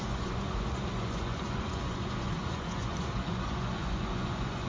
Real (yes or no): no